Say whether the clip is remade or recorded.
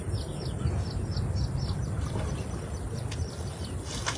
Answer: recorded